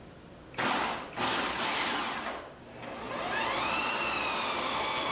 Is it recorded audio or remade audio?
recorded